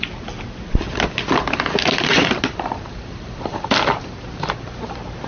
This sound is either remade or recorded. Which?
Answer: remade